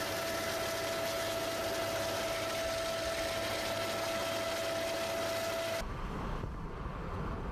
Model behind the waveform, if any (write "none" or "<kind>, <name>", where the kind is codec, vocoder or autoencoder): none